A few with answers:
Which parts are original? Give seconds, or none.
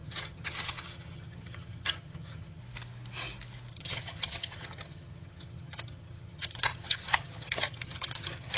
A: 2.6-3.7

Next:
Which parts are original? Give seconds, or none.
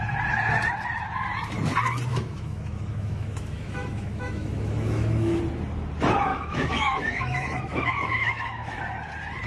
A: 0.0-2.1; 5.4-6.3; 8.8-9.5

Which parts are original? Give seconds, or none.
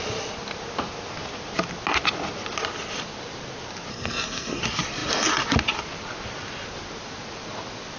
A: 0.0-3.9; 4.6-8.0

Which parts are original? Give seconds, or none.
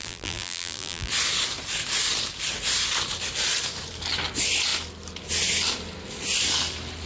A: 1.1-7.1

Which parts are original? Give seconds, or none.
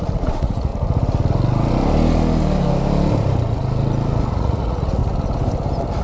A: 0.7-4.3; 5.0-6.0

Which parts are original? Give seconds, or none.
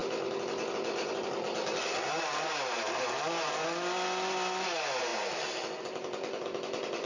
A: 0.0-7.1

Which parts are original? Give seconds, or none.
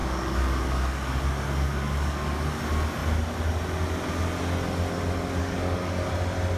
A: 2.6-5.4; 6.1-6.6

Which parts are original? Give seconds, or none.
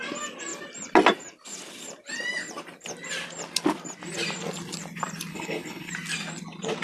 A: 0.0-5.3; 5.9-6.8